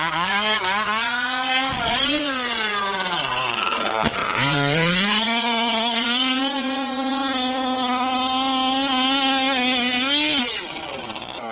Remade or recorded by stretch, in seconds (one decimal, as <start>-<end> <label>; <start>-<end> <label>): 0.0-7.2 remade; 7.2-10.4 recorded; 10.4-11.5 remade